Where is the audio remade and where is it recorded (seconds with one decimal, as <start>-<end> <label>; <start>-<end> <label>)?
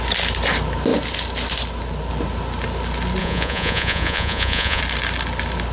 0.0-3.2 recorded; 3.2-4.8 remade; 4.8-5.7 recorded